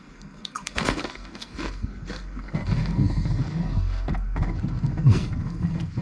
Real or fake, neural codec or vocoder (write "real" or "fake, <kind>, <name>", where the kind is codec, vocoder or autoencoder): fake, codec, SNAC